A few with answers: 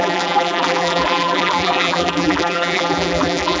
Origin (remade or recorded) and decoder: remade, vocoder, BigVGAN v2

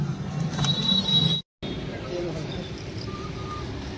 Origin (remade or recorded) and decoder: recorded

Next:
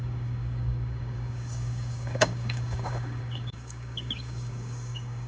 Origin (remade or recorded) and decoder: remade, codec, DAC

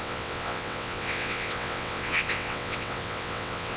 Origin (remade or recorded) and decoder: remade, vocoder, WaveNeXt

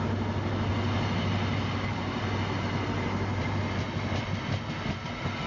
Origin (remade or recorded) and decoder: recorded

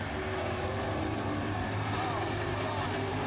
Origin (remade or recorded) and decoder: recorded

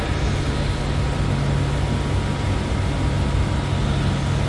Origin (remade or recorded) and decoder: recorded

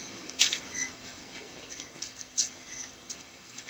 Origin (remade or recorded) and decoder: remade, codec, SNAC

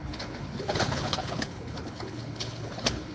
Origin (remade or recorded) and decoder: remade, codec, HILCodec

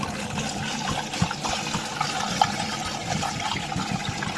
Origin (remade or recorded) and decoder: recorded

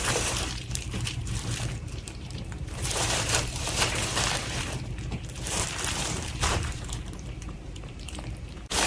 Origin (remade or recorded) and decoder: remade, vocoder, BigVGAN v2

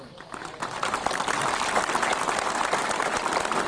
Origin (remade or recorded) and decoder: recorded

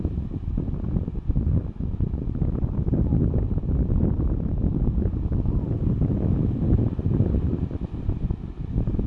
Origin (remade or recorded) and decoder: recorded